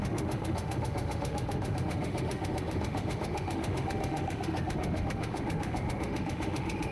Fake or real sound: fake